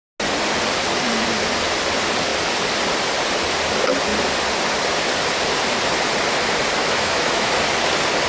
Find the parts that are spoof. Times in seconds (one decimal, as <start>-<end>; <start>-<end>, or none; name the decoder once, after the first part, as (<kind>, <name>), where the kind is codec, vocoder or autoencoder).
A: 6.8-7.5 (autoencoder, DAC-VAE)